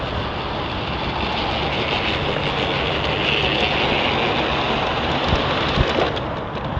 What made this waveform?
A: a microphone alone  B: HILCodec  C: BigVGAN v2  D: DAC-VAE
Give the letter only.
A